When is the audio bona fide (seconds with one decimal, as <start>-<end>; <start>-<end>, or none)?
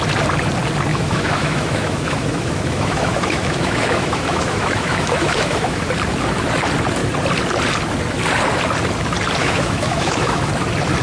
0.0-0.9; 5.9-9.4; 10.5-11.0